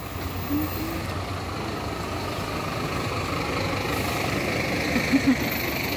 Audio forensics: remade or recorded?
recorded